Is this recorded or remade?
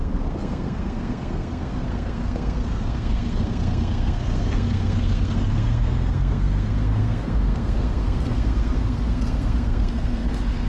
remade